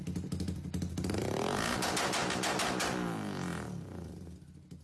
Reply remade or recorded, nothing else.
recorded